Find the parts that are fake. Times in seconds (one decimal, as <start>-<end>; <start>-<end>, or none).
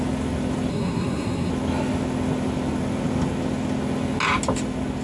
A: 0.7-1.5